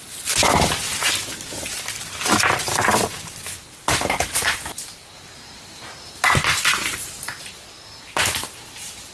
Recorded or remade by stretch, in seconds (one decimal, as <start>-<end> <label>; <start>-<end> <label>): 0.0-0.9 recorded; 0.9-4.4 remade; 4.4-9.1 recorded